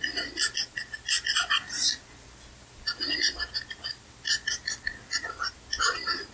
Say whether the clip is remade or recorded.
recorded